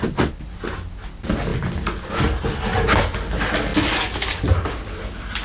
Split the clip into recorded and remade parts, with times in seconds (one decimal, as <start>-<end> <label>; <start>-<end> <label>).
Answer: 0.0-5.4 recorded